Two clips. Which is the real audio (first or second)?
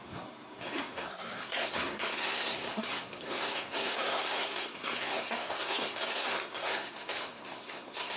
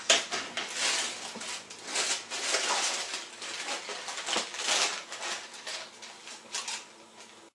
second